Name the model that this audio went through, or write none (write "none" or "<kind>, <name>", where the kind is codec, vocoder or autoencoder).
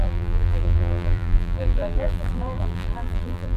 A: vocoder, BigVGAN v2